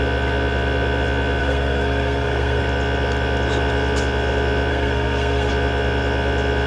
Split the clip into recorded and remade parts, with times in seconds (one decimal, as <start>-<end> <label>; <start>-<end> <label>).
0.0-1.4 recorded; 1.4-2.6 remade; 2.6-4.7 recorded; 4.7-5.5 remade; 5.5-6.7 recorded

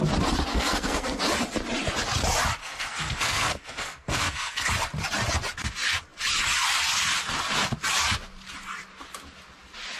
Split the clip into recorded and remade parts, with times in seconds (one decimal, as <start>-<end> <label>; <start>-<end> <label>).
0.0-0.5 recorded; 0.5-1.2 remade; 1.2-2.6 recorded; 2.6-4.7 remade; 4.7-10.0 recorded